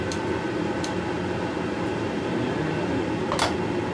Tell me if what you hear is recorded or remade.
recorded